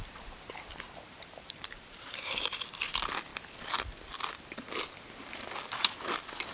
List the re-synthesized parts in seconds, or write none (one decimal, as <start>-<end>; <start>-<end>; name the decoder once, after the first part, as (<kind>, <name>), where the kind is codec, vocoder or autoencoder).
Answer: 0.0-2.5 (vocoder, BigVGAN v2)